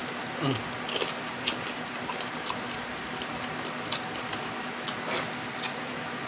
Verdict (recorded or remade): recorded